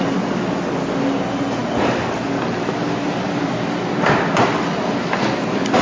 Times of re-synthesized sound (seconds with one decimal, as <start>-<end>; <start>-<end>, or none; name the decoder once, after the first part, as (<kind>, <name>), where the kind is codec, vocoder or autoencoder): none